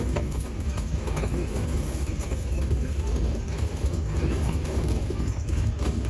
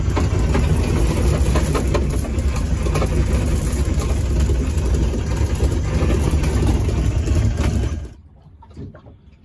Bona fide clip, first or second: second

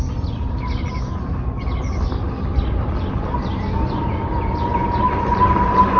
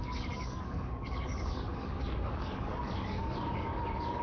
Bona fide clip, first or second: first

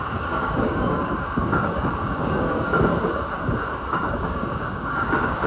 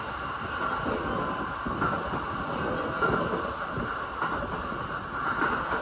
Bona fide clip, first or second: second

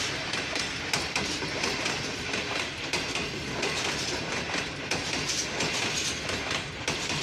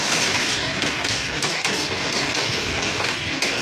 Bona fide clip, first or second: first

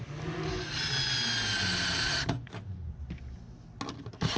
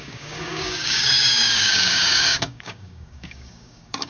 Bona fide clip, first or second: first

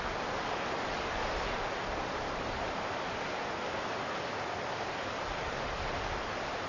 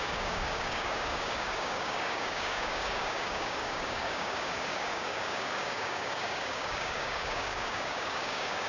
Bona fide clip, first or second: first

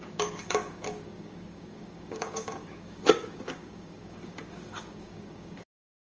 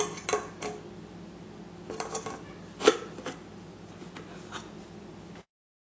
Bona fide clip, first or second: second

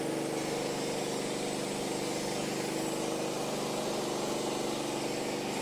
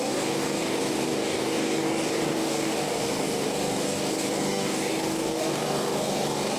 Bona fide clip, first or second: first